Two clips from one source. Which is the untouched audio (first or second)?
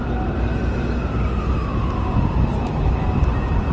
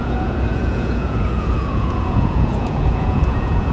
first